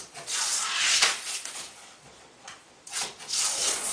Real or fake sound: fake